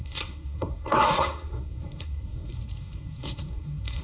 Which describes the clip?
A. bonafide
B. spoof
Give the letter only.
B